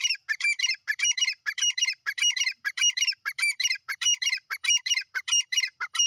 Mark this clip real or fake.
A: fake